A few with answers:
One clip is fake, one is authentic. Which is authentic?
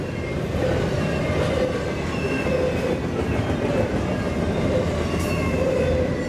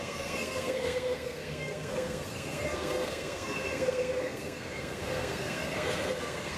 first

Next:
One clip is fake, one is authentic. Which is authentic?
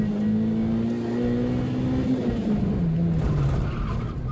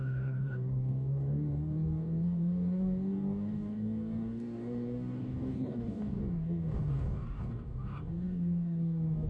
first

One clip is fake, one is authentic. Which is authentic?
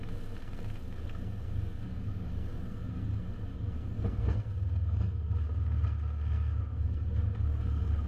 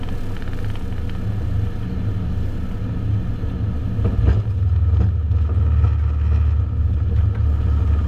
second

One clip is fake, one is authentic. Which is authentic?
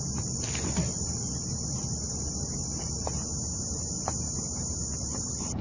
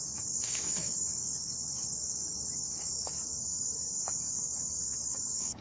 first